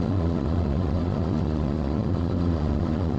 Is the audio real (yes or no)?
no